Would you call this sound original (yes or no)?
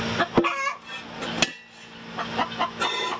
yes